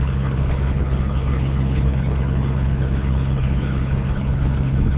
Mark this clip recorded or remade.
remade